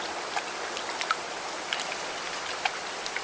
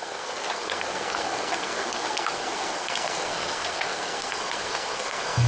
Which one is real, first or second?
first